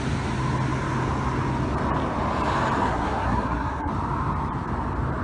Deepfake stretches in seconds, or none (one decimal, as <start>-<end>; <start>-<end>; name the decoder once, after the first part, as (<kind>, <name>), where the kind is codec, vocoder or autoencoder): 2.9-3.9 (codec, SNAC)